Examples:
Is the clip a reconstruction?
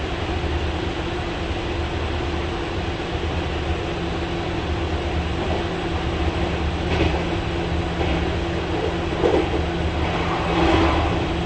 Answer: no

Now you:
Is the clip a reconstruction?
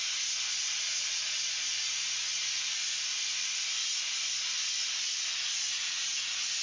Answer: no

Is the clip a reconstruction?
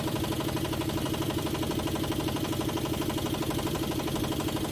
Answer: yes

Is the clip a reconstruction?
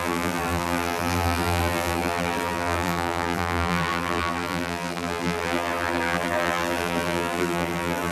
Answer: yes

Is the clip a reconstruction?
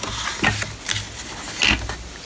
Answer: no